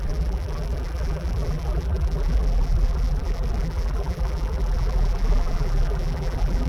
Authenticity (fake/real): fake